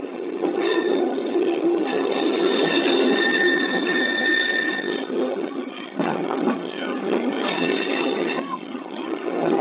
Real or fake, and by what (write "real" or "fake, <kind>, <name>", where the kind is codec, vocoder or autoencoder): fake, vocoder, HiFi-GAN